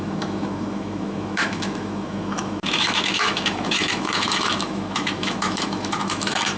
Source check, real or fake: fake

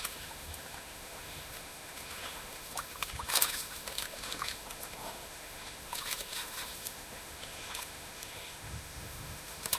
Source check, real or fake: fake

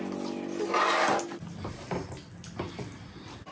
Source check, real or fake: real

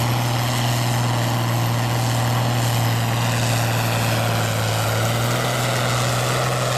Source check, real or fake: real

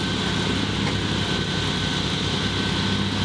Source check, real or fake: real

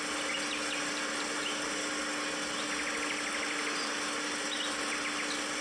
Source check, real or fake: real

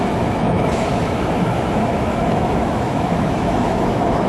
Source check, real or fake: fake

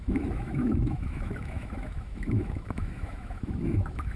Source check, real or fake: fake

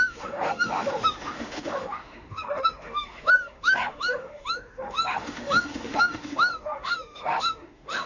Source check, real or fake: fake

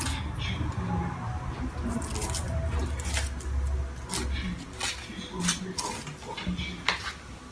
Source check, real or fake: real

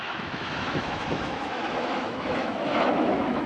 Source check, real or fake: fake